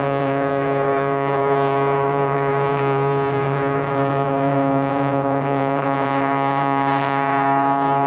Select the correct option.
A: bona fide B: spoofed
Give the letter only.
B